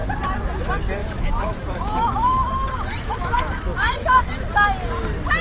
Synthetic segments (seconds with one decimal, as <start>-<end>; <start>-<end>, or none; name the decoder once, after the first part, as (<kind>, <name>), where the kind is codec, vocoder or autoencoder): 1.0-4.2 (autoencoder, DAC-VAE)

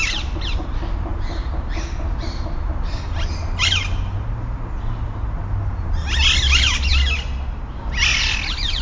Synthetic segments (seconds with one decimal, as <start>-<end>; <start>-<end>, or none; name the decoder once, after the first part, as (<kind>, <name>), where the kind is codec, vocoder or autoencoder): none

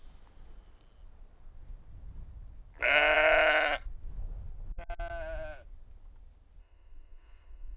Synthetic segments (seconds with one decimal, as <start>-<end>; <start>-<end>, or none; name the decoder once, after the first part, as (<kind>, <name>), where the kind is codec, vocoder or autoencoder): 6.6-7.8 (autoencoder, DAC-VAE)

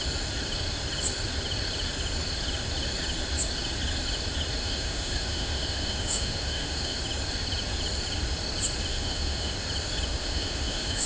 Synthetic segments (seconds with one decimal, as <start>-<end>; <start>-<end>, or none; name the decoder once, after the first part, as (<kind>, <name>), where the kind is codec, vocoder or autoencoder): 4.6-7.0 (autoencoder, DAC-VAE); 8.9-9.5; 10.2-11.1

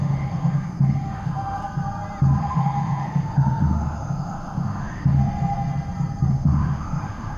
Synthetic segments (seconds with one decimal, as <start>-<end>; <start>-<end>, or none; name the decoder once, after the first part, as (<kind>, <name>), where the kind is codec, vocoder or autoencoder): 0.0-1.6 (autoencoder, DAC-VAE); 2.4-5.2; 6.3-7.4

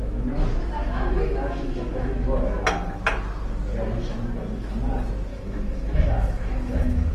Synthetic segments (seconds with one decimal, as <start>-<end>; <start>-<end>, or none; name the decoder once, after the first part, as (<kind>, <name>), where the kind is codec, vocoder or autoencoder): 0.8-2.2 (autoencoder, DAC-VAE); 5.3-7.1

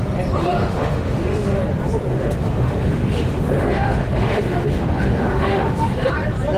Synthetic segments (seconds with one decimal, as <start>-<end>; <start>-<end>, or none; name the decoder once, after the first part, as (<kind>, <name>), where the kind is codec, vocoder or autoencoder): 0.4-1.6 (autoencoder, DAC-VAE); 2.1-6.1